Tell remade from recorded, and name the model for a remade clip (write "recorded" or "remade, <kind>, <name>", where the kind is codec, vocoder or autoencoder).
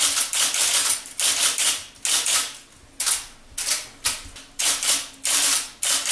recorded